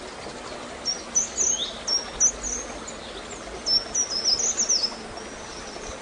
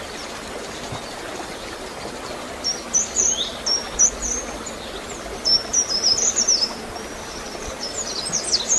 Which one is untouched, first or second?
first